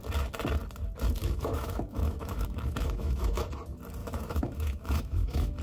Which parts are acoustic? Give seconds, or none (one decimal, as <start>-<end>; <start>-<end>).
0.0-1.2; 3.5-4.0